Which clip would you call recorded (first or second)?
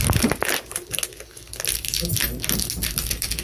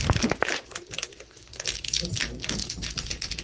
first